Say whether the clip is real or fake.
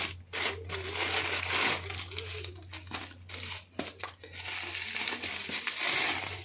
real